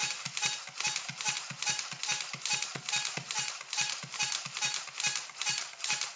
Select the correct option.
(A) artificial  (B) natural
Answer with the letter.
B